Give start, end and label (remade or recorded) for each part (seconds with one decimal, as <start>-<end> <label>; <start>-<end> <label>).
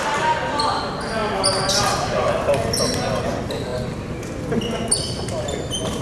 0.0-6.0 recorded